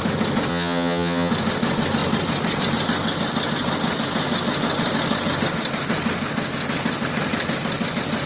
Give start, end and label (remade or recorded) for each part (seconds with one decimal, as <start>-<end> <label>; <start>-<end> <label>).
0.0-0.5 recorded; 0.5-1.3 remade; 1.3-8.3 recorded